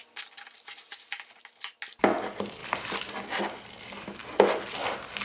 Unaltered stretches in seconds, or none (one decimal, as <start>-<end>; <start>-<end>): 0.0-5.2